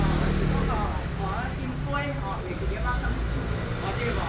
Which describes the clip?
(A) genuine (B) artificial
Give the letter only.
A